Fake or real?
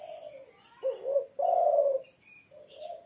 real